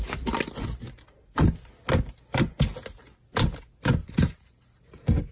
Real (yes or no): yes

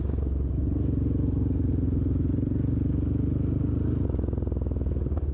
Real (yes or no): yes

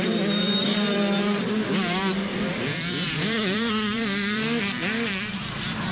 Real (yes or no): no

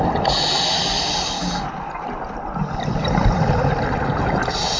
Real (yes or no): yes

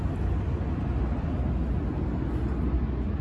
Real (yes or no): yes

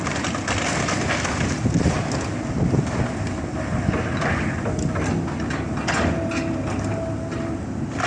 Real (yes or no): yes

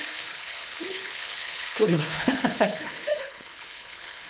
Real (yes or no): no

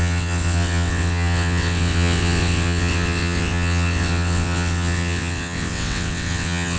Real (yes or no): no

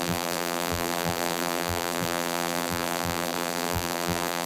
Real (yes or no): no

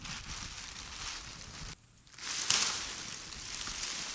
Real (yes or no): yes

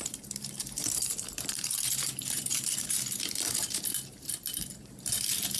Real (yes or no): no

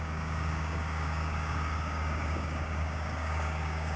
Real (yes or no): no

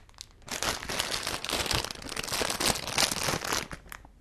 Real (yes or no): yes